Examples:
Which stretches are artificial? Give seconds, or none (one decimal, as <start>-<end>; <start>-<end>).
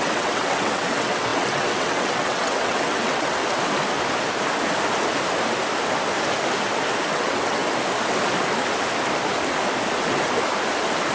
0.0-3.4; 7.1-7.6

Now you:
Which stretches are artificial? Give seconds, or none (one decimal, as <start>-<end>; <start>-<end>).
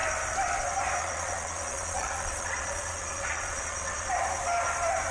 1.0-4.1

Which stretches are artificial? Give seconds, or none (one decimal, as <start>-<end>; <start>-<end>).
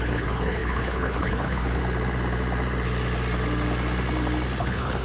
0.0-1.8; 4.6-5.0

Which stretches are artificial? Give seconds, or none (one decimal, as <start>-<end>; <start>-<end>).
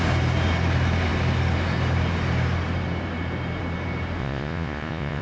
4.2-5.2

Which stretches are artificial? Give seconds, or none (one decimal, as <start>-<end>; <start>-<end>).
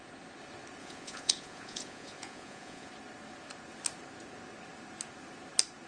0.8-2.9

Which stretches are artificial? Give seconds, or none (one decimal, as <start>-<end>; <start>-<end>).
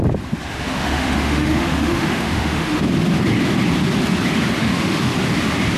0.5-2.8; 4.6-5.1